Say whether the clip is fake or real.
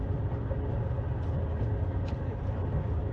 real